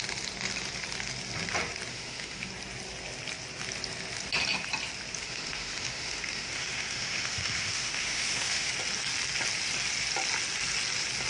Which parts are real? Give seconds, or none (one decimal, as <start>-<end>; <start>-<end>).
0.0-1.9; 2.5-5.2; 8.7-11.3